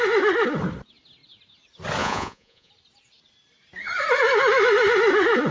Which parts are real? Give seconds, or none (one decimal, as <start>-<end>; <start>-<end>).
0.0-2.0; 2.7-5.5